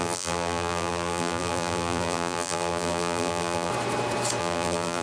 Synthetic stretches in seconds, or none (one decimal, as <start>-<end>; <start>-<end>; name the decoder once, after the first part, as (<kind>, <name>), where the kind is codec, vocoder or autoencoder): 0.0-3.7 (vocoder, BigVGAN v2); 4.4-5.0